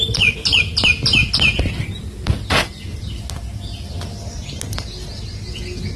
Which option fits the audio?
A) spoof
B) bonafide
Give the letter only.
B